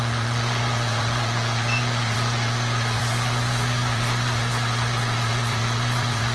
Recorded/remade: remade